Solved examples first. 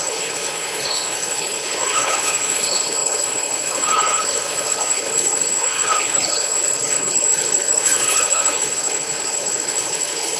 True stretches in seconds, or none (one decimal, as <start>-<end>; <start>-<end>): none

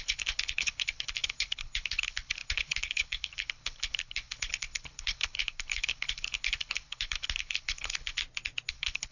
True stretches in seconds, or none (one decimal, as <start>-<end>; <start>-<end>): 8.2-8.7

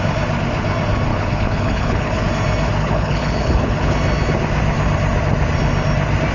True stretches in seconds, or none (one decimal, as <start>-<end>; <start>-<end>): 0.0-1.1; 2.2-2.8; 3.9-6.3